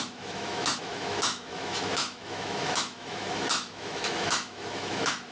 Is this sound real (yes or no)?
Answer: no